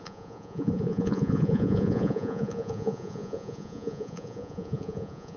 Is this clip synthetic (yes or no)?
yes